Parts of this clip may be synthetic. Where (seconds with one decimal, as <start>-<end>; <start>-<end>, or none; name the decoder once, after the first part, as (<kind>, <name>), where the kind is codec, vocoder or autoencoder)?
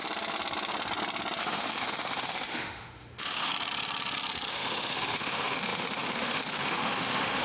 1.4-3.5 (autoencoder, DAC-VAE); 4.5-7.4